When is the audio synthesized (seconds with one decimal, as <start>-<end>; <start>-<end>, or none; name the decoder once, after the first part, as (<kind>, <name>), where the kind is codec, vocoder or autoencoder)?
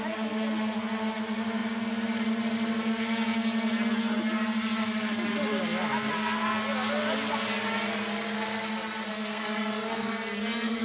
9.1-10.1 (codec, SNAC)